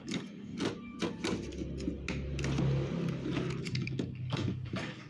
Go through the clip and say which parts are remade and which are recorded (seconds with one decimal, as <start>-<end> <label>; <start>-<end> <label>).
0.0-0.5 remade; 0.5-3.6 recorded; 3.6-5.1 remade